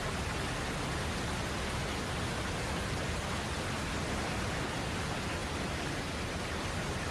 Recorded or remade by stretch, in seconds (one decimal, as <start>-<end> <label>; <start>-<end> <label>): 0.0-7.1 recorded